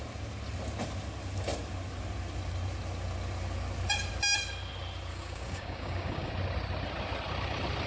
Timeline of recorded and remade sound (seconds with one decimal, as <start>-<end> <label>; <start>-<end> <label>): 0.0-5.1 recorded; 5.1-6.3 remade; 6.3-7.9 recorded